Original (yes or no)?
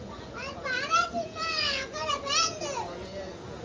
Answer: no